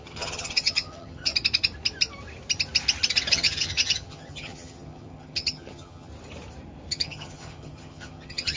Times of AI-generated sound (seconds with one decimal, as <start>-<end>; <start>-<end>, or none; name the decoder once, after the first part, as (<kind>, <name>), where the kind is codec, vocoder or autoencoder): 0.0-1.3 (vocoder, HiFi-GAN); 3.3-6.1; 6.9-8.6